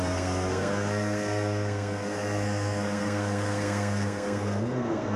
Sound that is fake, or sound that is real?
fake